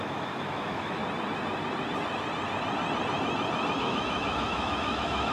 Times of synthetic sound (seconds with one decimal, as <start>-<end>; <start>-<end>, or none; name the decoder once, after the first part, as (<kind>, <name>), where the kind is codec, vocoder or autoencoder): 0.0-1.0 (autoencoder, DAC-VAE); 3.8-5.3